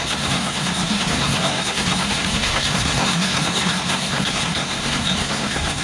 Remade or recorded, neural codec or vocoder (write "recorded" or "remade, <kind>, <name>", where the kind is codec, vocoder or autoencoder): remade, codec, SNAC